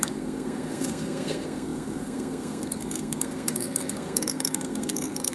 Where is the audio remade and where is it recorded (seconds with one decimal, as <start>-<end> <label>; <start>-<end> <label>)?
0.0-5.3 remade